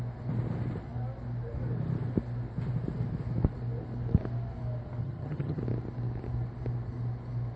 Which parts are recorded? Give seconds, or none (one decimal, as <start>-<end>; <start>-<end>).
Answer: 0.0-5.0; 5.6-7.6